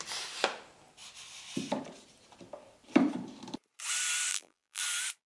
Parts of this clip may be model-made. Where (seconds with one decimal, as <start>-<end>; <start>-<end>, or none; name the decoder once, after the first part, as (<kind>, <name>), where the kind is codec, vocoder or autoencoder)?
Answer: 4.3-4.8 (vocoder, BigVGAN v2)